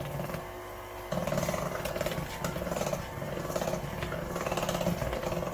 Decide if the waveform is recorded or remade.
recorded